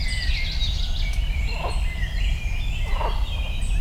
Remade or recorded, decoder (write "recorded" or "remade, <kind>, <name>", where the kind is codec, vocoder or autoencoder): recorded